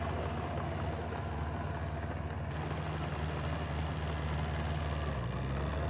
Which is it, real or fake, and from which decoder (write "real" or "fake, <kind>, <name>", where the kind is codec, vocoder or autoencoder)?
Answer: real